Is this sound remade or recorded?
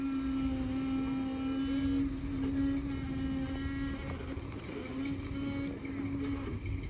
recorded